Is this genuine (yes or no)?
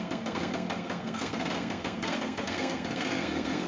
no